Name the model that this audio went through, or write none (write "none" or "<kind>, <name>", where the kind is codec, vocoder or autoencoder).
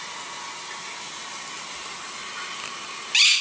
none